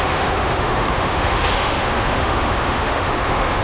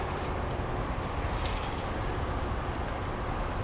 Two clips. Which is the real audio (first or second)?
second